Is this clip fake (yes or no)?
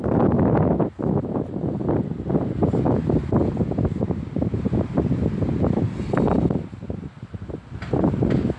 no